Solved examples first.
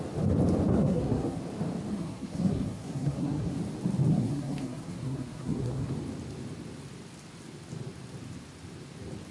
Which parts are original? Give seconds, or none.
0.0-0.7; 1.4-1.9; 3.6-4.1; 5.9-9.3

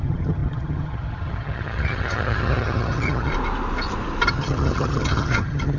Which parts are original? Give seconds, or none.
3.3-4.3

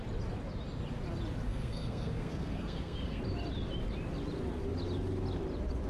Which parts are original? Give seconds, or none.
0.0-1.5; 3.2-5.9

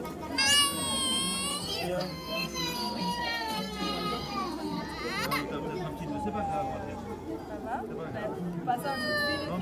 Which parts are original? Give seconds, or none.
0.0-1.5; 4.8-9.6

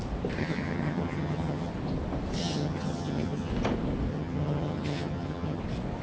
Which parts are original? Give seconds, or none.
0.0-0.4; 1.7-2.4; 3.5-4.1; 5.6-6.0

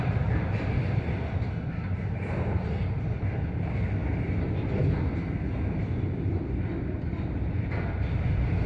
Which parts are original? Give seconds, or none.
0.0-8.7

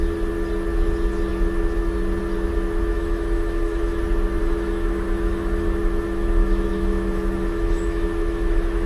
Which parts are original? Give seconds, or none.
0.0-2.9; 4.0-4.4